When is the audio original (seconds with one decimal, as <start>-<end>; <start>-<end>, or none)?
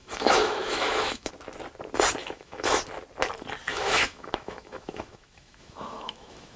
1.3-2.2; 2.8-3.7